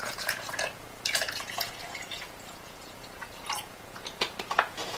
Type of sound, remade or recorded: remade